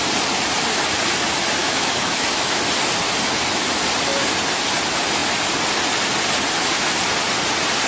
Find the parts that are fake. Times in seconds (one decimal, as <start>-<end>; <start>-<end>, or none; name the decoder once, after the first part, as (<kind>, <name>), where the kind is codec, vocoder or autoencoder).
1.6-2.6 (autoencoder, DAC-VAE)